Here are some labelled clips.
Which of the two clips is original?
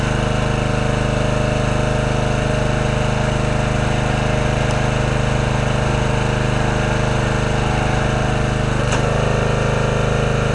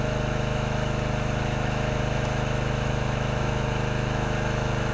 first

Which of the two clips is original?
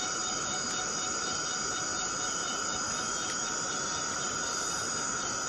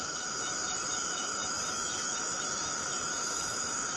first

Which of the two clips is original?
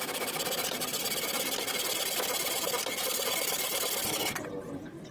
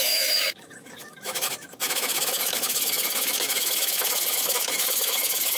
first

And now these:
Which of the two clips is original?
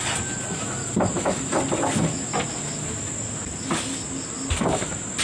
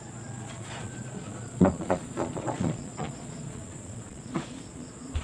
first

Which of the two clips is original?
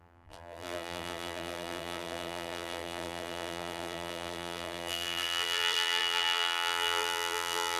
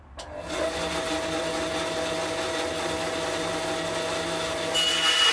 second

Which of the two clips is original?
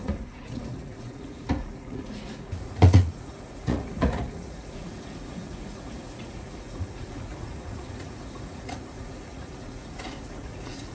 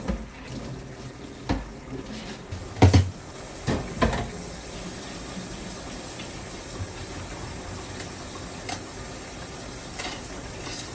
second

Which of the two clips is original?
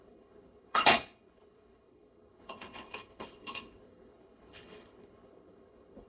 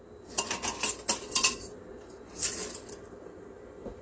second